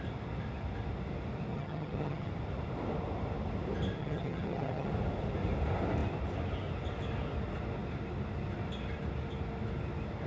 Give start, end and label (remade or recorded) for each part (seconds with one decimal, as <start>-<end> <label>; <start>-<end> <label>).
0.0-1.5 recorded; 1.5-2.3 remade; 2.3-4.0 recorded; 4.0-4.9 remade; 4.9-10.3 recorded